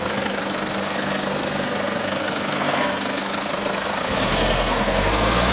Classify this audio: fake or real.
fake